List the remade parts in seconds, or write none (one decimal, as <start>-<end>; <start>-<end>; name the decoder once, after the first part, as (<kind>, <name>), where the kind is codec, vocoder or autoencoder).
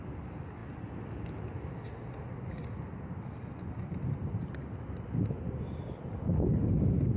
none